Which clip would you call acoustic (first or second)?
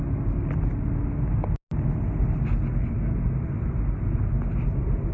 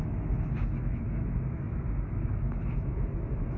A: first